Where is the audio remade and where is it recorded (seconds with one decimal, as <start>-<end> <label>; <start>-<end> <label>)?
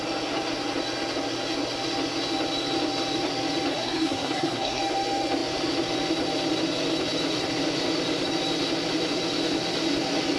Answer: 0.0-3.7 recorded; 3.7-4.8 remade; 4.8-10.4 recorded